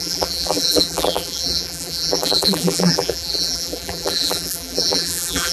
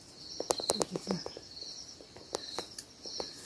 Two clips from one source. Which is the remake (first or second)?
first